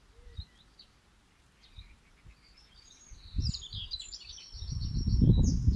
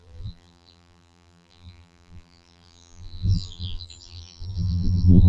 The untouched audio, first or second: first